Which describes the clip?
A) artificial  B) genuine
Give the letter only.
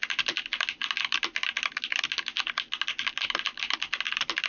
B